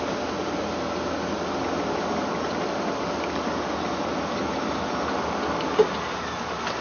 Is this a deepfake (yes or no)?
no